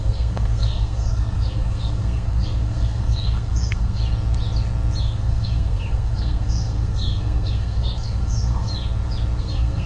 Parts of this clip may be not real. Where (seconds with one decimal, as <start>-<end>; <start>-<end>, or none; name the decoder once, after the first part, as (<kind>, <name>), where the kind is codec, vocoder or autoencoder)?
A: 0.0-4.0 (codec, SNAC); 5.0-8.7; 9.4-9.9

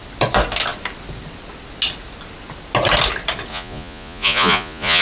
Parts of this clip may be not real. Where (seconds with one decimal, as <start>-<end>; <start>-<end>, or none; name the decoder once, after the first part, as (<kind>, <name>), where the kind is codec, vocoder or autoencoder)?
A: 3.5-5.0 (vocoder, Vocos)

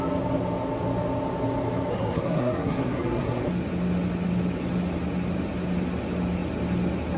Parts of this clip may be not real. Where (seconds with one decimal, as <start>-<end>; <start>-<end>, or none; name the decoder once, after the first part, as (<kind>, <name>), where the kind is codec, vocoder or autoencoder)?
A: 1.9-3.4 (codec, SNAC)